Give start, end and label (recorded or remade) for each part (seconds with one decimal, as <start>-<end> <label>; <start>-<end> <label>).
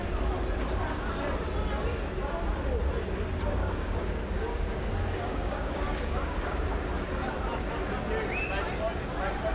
0.0-3.6 recorded; 3.6-6.9 remade; 6.9-9.5 recorded